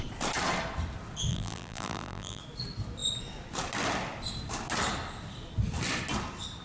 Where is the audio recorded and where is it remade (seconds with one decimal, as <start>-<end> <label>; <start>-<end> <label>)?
0.0-1.3 recorded; 1.3-2.4 remade; 2.4-6.6 recorded